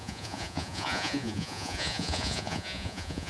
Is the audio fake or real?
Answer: fake